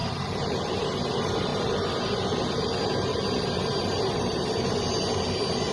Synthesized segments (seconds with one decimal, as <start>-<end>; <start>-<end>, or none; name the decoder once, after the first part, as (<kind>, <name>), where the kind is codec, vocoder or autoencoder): 0.0-0.7 (vocoder, BigVGAN v2); 3.1-4.6